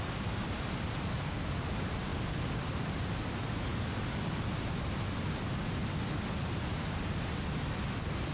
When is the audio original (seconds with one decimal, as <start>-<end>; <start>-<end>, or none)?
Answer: 0.0-8.3